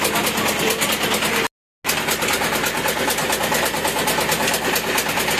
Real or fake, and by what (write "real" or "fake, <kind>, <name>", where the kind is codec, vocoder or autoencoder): real